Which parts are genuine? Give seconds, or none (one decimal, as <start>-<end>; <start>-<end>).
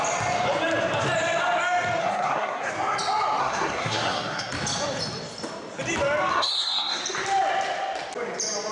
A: 0.0-2.0; 2.7-3.4; 4.5-6.3; 7.0-8.7